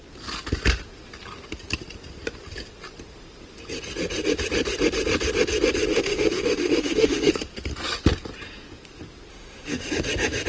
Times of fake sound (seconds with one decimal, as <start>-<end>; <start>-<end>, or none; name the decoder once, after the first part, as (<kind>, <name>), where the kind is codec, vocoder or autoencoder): 5.9-7.3 (autoencoder, DAC-VAE); 9.3-9.9